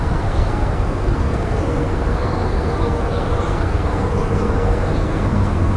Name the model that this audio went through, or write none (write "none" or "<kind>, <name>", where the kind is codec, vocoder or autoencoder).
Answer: codec, SNAC